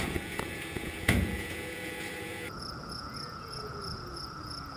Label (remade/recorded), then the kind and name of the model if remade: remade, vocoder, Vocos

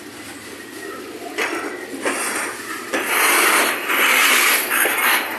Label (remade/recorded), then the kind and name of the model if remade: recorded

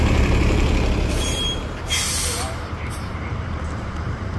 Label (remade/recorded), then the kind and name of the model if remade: remade, vocoder, BigVGAN v2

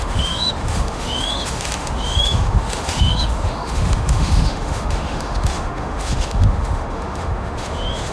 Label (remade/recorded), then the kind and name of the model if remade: remade, autoencoder, DAC-VAE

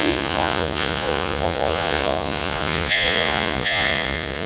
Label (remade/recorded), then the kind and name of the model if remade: remade, vocoder, Vocos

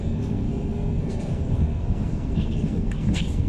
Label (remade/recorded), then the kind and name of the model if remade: remade, codec, SNAC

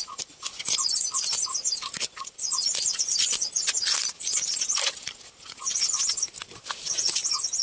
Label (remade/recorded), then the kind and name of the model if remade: recorded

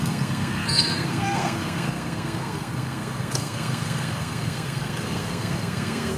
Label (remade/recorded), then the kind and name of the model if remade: remade, codec, SNAC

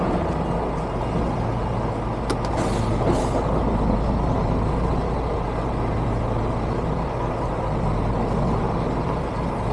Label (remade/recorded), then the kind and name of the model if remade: recorded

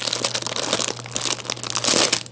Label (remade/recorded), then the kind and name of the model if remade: recorded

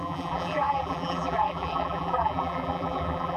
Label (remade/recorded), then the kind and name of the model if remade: remade, vocoder, BigVGAN v2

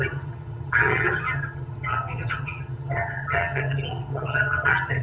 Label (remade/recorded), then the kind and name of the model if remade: remade, vocoder, HiFi-GAN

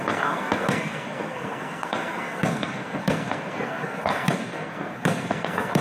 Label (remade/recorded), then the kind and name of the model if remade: remade, codec, SNAC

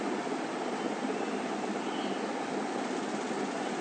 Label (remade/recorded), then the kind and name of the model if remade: recorded